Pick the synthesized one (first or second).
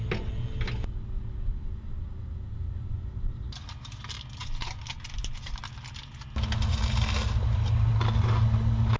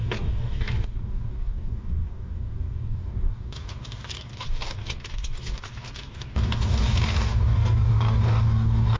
second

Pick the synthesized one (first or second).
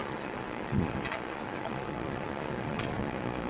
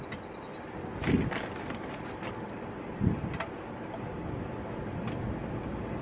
first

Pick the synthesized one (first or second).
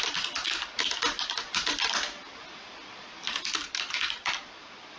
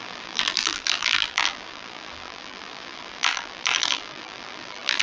second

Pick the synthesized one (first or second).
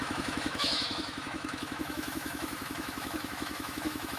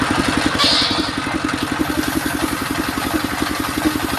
first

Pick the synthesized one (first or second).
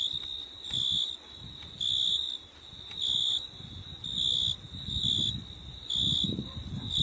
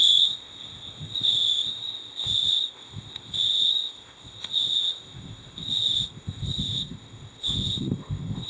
second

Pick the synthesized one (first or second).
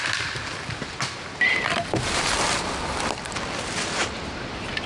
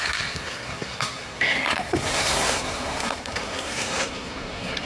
second